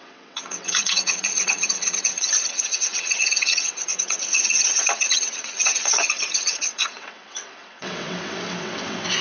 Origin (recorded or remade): remade